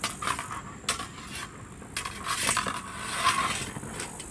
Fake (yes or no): no